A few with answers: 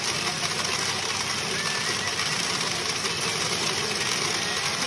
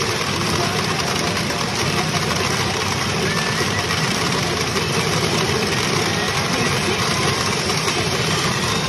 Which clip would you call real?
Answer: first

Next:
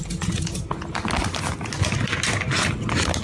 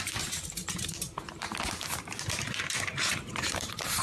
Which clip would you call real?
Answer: first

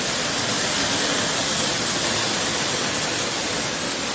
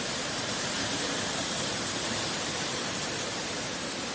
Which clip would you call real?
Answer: first